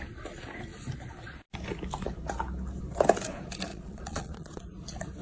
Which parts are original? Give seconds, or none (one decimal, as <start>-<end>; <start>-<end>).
0.0-3.7; 4.6-5.2